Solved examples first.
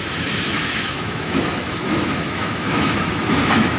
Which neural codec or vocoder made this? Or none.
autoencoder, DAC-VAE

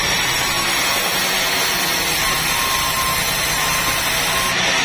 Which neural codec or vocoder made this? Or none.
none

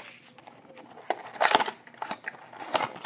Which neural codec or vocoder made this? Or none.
none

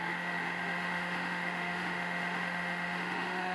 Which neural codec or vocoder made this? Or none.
autoencoder, DAC-VAE